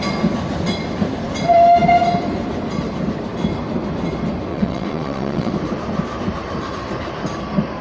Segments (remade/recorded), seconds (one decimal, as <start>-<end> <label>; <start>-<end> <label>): 0.0-4.5 recorded; 4.5-5.5 remade; 5.5-7.8 recorded

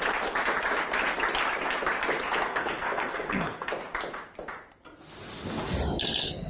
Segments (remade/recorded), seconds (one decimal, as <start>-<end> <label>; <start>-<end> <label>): 0.0-2.5 recorded; 2.5-3.7 remade; 3.7-6.5 recorded

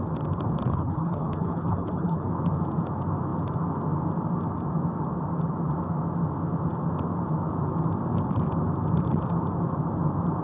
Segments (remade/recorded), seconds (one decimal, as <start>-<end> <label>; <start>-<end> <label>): 0.0-0.7 recorded; 0.7-2.3 remade; 2.3-10.4 recorded

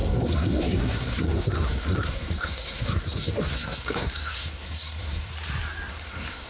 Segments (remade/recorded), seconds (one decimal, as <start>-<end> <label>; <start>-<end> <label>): 0.0-5.3 remade; 5.3-5.9 recorded; 5.9-6.5 remade